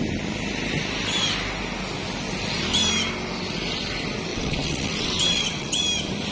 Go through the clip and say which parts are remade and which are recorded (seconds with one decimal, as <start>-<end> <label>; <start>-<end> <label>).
0.0-4.3 recorded; 4.3-5.8 remade; 5.8-6.3 recorded